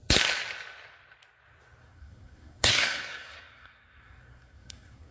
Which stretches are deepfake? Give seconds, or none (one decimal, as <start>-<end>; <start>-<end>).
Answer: 1.8-5.1